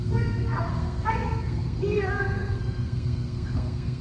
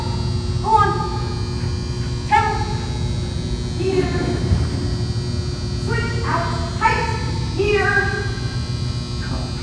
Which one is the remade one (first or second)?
first